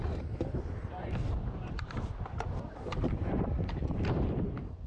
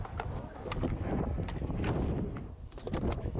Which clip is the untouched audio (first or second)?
second